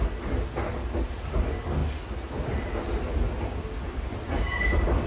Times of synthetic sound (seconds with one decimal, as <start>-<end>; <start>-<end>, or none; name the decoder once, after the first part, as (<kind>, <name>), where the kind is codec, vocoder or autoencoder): none